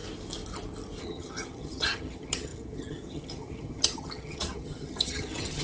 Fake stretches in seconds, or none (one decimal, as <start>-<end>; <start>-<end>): 1.0-5.6